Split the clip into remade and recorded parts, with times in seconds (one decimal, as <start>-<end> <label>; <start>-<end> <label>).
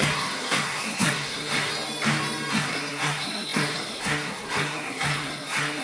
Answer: 0.0-1.7 remade; 1.7-2.5 recorded; 2.5-5.8 remade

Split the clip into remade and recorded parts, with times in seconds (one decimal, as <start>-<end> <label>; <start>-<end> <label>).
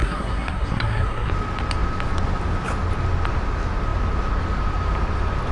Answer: 0.0-1.3 remade; 1.3-5.5 recorded